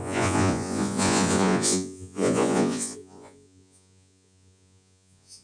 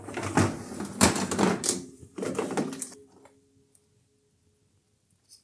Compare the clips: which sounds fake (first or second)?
first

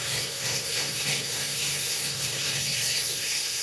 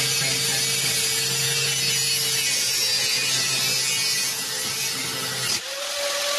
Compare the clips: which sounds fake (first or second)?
first